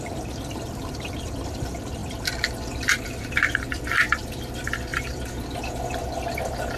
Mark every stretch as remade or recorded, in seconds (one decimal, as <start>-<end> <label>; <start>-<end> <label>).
0.0-6.8 recorded